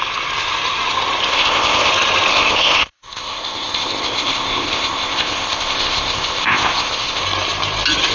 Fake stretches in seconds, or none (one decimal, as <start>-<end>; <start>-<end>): 1.3-1.9; 2.3-7.2